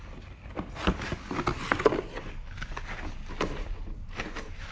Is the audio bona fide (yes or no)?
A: yes